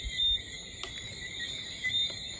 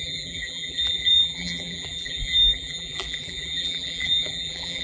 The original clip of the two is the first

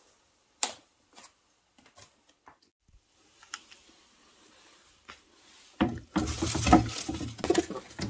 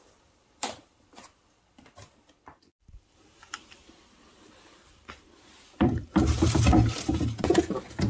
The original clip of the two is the first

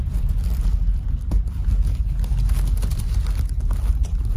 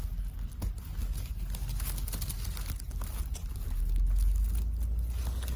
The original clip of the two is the second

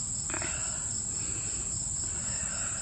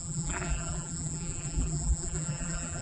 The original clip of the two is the first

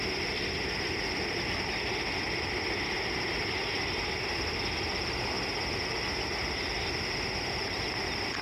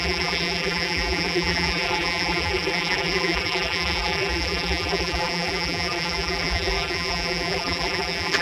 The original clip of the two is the first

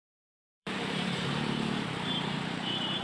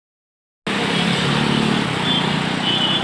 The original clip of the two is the second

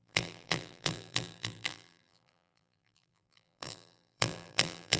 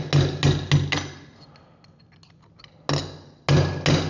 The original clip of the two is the second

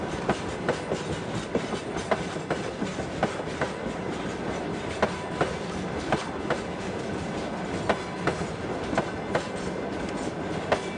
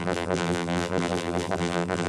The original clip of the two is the first